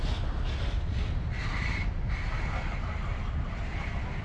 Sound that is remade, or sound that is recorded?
recorded